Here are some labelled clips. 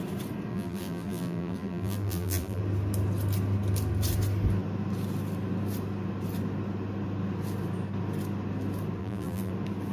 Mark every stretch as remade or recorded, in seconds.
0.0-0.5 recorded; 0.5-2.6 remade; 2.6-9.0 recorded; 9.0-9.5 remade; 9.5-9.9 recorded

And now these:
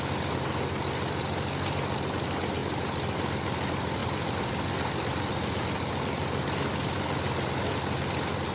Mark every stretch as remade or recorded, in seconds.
0.0-4.0 recorded; 4.0-5.3 remade; 5.3-8.5 recorded

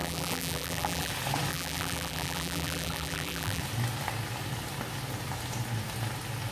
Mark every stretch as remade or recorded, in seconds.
0.0-1.1 remade; 1.1-1.5 recorded; 1.5-3.6 remade; 3.6-6.5 recorded

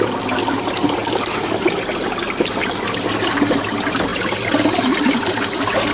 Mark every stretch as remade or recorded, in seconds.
0.0-5.9 recorded